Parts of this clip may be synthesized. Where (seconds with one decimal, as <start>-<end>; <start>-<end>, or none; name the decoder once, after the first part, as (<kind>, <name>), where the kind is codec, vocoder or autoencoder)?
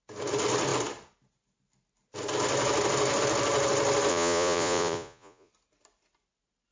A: 4.1-5.5 (vocoder, Vocos)